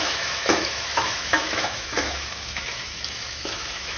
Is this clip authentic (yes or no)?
no